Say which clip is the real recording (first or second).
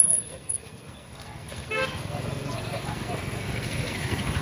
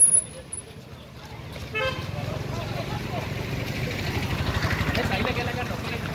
second